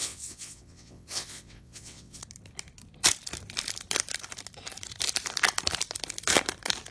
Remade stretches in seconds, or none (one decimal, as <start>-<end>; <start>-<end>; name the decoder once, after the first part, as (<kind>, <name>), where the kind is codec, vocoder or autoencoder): 0.0-2.2 (vocoder, WaveNeXt)